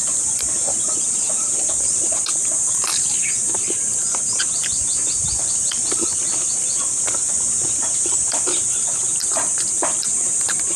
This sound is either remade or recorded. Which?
recorded